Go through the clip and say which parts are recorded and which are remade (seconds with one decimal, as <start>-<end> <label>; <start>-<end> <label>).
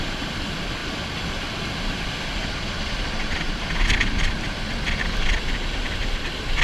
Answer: 0.0-6.6 recorded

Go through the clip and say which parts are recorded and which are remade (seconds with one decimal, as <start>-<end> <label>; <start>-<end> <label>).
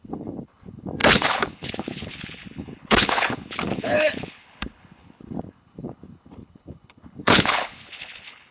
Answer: 0.0-8.5 remade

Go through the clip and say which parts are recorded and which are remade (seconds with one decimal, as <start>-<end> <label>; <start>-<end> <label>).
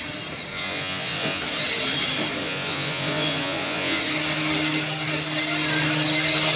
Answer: 0.0-0.5 recorded; 0.5-1.4 remade; 1.4-2.4 recorded; 2.4-4.0 remade; 4.0-6.6 recorded